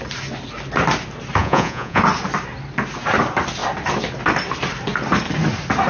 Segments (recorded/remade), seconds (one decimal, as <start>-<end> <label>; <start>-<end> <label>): 0.0-1.4 recorded; 1.4-2.0 remade; 2.0-5.9 recorded